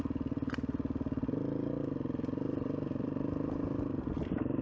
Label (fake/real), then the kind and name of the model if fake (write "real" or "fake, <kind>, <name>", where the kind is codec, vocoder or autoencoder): fake, vocoder, BigVGAN v2